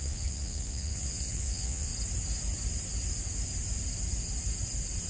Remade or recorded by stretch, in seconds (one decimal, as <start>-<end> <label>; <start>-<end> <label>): 0.0-1.9 remade; 1.9-5.1 recorded